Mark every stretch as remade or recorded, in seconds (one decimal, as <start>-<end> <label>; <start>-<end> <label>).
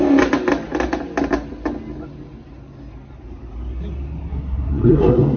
0.0-4.3 recorded; 4.3-5.4 remade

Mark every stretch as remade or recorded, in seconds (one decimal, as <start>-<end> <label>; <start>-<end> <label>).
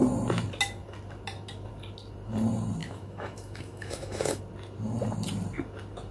0.0-2.8 recorded; 2.8-4.4 remade; 4.4-6.1 recorded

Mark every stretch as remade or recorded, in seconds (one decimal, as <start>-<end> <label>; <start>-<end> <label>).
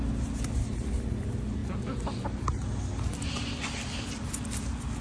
0.0-5.0 recorded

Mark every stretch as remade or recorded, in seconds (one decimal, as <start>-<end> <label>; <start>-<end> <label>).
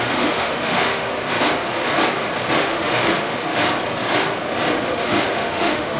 0.0-1.1 remade; 1.1-2.5 recorded; 2.5-3.6 remade; 3.6-4.7 recorded; 4.7-6.0 remade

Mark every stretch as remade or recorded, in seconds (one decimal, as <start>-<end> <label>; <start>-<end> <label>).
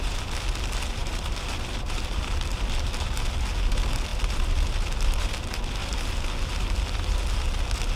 0.0-8.0 recorded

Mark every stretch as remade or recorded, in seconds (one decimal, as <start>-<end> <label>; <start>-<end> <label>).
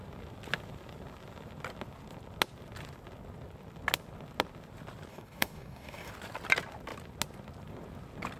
0.0-5.1 recorded; 5.1-6.1 remade; 6.1-8.4 recorded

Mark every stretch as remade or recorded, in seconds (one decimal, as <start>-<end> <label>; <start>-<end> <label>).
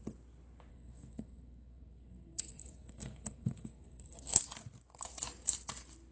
0.0-0.7 recorded; 0.7-4.4 remade; 4.4-6.1 recorded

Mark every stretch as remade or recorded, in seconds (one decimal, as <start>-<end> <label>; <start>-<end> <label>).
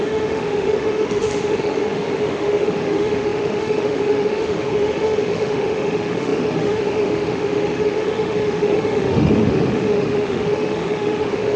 0.0-11.6 remade